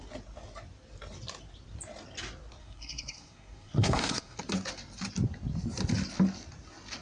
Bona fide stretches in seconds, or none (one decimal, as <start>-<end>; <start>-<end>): 0.0-2.6; 4.4-7.0